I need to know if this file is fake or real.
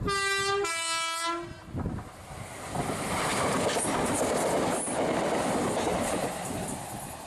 real